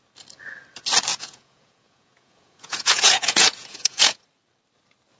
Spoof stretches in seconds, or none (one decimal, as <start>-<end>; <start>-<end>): 1.1-4.2